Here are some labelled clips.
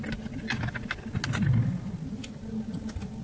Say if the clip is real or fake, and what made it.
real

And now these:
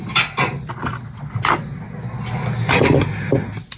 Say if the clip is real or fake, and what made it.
real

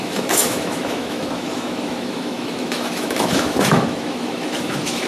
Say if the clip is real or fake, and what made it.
fake, autoencoder, DAC-VAE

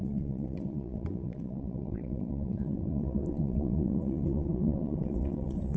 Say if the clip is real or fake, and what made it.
fake, vocoder, WaveNeXt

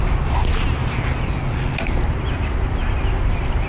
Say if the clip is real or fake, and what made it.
real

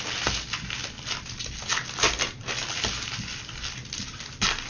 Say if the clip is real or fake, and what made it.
real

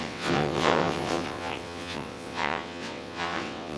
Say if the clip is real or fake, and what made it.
fake, vocoder, WaveNeXt